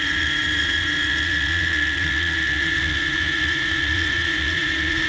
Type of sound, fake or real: fake